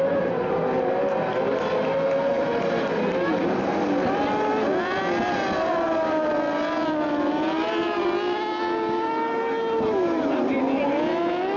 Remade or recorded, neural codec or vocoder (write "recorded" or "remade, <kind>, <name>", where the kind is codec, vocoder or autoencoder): recorded